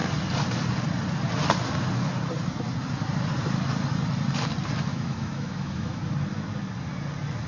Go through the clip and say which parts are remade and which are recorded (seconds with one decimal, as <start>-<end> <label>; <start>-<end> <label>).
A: 0.0-4.9 recorded; 4.9-6.0 remade; 6.0-7.5 recorded